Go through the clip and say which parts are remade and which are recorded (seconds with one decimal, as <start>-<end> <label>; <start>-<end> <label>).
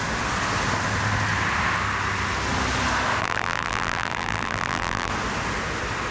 0.0-3.2 recorded; 3.2-5.1 remade; 5.1-6.1 recorded